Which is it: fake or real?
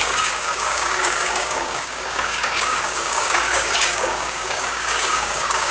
fake